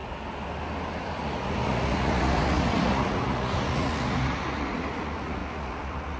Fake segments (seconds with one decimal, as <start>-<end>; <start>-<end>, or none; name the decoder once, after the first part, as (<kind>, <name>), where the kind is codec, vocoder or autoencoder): 1.0-6.2 (vocoder, Vocos)